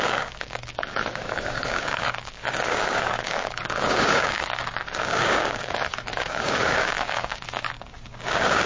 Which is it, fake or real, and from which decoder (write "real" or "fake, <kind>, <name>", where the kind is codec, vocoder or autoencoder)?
fake, codec, DAC